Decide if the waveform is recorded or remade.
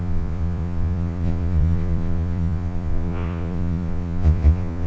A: remade